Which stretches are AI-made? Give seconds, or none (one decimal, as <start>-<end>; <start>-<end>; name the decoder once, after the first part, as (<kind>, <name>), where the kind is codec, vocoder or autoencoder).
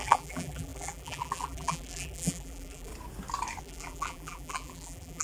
0.0-2.9 (vocoder, BigVGAN v2); 3.6-5.2